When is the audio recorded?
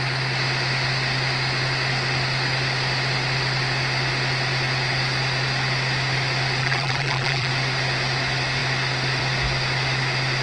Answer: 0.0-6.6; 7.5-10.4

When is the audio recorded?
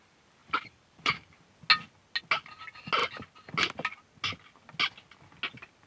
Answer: 0.0-0.4; 1.5-5.9